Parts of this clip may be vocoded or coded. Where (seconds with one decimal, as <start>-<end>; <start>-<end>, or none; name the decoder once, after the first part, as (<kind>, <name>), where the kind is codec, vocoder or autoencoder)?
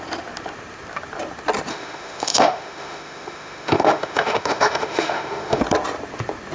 1.7-5.6 (autoencoder, DAC-VAE)